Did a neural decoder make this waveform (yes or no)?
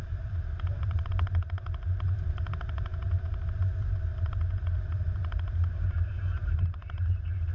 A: yes